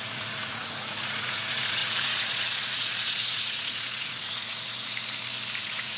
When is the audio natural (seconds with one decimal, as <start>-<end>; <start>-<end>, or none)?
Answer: 4.7-5.6